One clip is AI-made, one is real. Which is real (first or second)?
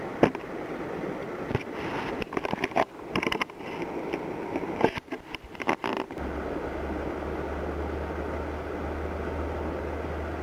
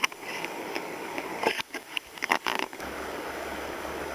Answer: first